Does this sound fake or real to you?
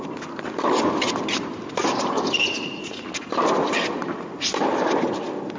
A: real